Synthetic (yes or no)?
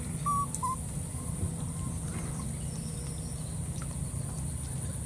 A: no